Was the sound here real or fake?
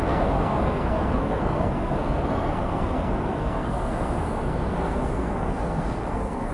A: fake